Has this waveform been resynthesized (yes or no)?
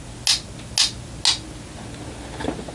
no